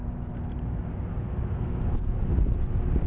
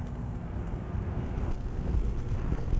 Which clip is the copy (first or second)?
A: second